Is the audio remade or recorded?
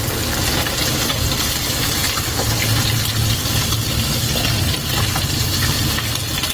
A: recorded